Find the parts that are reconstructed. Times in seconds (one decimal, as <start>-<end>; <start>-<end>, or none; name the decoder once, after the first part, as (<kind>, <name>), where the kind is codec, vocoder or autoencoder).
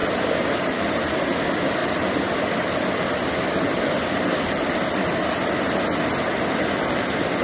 none